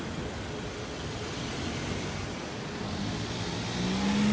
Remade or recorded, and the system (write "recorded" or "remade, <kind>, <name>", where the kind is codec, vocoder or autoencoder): recorded